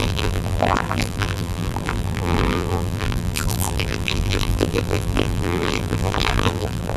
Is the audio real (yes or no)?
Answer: no